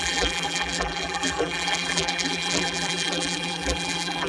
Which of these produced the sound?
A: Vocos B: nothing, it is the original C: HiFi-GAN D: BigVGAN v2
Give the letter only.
D